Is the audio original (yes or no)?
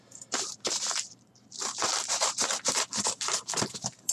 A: no